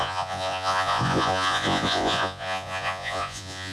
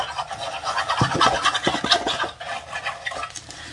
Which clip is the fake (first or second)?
first